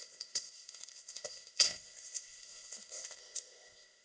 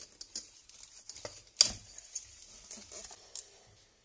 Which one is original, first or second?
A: second